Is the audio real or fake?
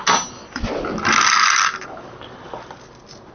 real